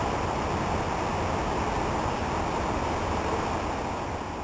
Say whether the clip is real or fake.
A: real